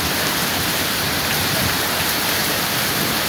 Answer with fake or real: fake